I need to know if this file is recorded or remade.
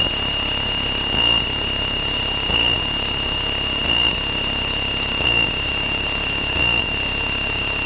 recorded